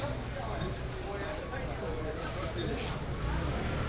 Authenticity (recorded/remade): recorded